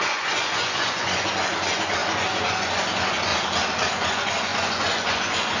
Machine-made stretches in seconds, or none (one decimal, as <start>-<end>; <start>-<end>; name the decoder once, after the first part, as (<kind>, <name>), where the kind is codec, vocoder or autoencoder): 0.0-3.3 (vocoder, Vocos); 3.9-5.6